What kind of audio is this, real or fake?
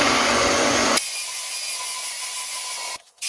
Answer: fake